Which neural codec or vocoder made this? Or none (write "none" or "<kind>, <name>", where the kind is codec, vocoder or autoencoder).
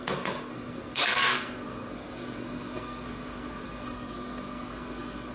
codec, SNAC